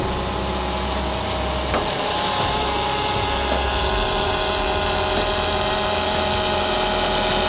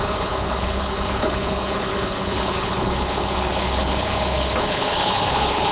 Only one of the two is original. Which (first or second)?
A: first